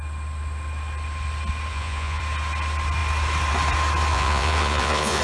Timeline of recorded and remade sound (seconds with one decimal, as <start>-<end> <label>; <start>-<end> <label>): 0.0-1.7 recorded; 1.7-2.2 remade; 2.2-4.1 recorded; 4.1-5.2 remade